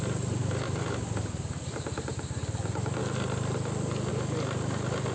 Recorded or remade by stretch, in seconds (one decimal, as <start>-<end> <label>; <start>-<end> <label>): 0.0-5.1 recorded